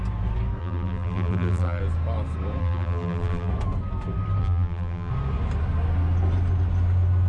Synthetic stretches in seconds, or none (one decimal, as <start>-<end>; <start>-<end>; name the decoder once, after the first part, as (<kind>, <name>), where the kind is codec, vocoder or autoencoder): 0.6-1.8 (vocoder, BigVGAN v2); 2.6-3.5; 4.4-5.1